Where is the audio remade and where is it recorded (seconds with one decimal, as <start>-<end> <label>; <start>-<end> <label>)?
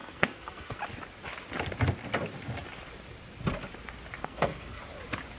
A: 0.0-0.8 remade; 0.8-4.2 recorded; 4.2-4.8 remade; 4.8-5.4 recorded